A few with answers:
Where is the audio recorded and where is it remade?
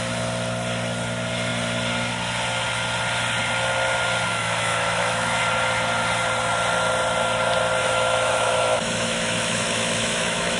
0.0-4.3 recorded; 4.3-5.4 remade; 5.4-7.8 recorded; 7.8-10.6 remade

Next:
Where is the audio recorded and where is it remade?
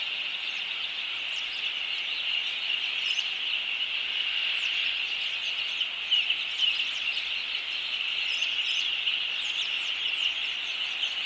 0.0-11.3 recorded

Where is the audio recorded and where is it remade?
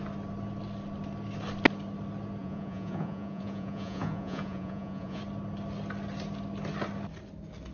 0.0-2.4 recorded; 2.4-5.2 remade; 5.2-7.7 recorded